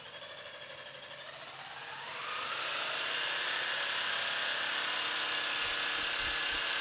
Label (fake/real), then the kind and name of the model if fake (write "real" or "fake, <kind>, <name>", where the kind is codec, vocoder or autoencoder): real